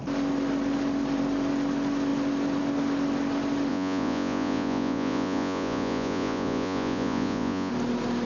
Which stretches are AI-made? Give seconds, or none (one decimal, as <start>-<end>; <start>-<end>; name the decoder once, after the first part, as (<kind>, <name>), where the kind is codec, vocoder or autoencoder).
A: 3.7-7.7 (vocoder, Vocos)